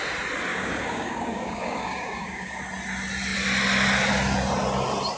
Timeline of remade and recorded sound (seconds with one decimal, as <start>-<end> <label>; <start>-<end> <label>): 0.0-0.5 recorded; 0.5-2.6 remade; 2.6-5.2 recorded